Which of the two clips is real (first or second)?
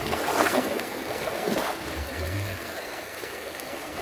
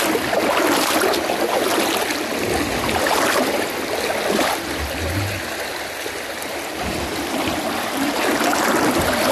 second